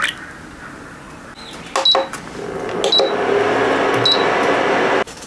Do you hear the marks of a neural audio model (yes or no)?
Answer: no